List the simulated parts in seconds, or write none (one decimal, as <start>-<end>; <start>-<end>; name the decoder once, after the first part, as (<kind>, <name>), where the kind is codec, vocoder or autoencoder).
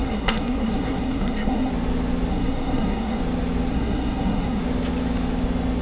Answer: 0.0-1.7 (codec, SNAC); 2.3-3.2; 3.7-4.6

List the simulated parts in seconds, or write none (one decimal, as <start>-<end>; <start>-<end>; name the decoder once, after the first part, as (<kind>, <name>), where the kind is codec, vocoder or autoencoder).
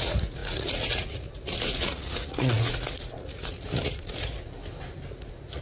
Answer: 0.0-4.6 (vocoder, Vocos); 5.1-5.6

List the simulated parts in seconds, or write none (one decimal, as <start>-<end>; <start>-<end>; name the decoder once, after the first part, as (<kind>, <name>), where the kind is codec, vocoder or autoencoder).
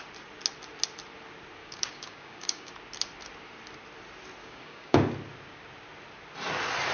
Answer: 1.6-2.7 (codec, DAC); 4.4-5.1